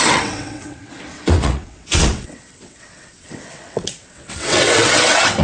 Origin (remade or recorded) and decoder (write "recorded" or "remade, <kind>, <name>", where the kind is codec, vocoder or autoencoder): remade, vocoder, WaveNeXt